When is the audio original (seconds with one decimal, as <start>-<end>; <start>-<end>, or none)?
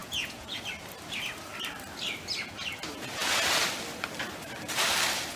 0.6-5.4